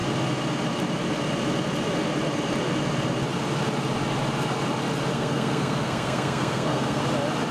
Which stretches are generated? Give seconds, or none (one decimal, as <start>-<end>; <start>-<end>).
5.1-7.0